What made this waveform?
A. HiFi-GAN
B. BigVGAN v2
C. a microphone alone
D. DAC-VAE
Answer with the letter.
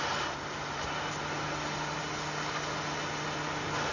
C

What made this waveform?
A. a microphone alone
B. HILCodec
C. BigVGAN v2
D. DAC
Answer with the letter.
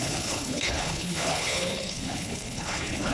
B